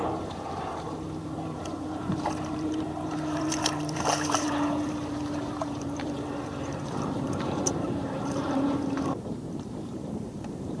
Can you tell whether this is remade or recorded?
remade